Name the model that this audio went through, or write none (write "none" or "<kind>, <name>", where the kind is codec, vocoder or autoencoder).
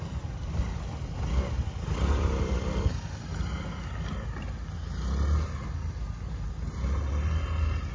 none